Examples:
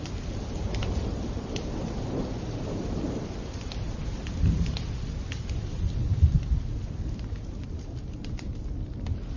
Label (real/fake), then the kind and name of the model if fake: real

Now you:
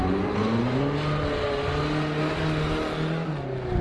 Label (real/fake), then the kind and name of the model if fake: real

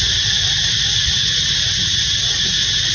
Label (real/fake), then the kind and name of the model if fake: real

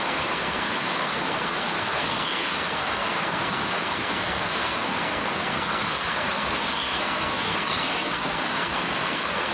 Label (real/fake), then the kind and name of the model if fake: fake, codec, SNAC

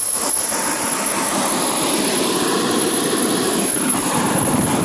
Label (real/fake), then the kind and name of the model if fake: fake, vocoder, BigVGAN v2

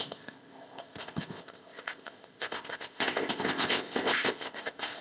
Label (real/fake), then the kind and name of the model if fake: fake, codec, ZipCodec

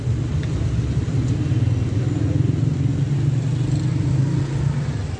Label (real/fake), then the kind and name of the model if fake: real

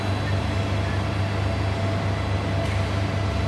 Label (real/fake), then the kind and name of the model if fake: real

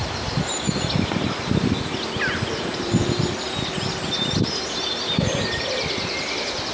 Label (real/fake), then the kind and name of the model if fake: real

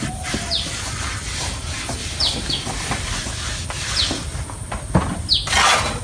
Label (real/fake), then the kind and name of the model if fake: real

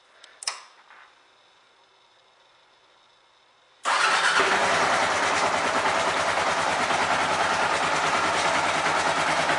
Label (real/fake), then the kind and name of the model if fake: real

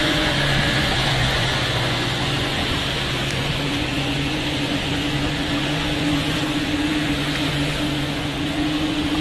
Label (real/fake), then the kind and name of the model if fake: fake, vocoder, Vocos